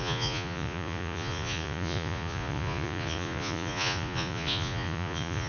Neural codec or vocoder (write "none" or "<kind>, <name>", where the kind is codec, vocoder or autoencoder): vocoder, Vocos